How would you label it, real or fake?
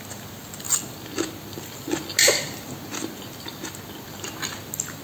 real